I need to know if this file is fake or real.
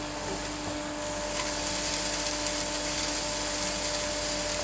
real